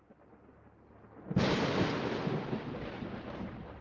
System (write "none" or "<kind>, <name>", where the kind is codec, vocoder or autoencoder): none